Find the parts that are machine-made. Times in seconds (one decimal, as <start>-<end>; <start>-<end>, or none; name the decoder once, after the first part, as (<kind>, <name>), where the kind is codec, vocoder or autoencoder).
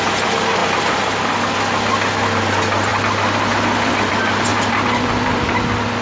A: 4.5-5.5 (vocoder, BigVGAN v2)